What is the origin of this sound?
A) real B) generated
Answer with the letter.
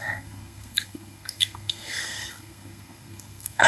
B